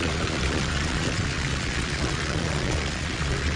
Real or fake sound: fake